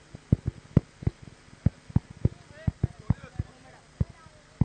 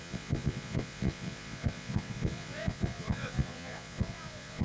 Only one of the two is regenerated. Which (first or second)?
second